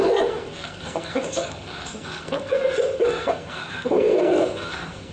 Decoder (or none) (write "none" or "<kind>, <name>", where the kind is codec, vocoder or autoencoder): codec, SNAC